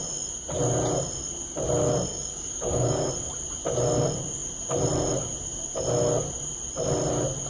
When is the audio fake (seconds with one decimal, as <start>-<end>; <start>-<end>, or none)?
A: 2.1-3.1